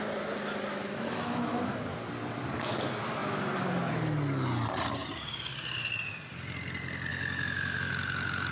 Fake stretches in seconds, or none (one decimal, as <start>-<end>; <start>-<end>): 0.7-1.7; 7.1-7.9